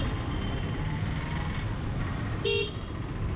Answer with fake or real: real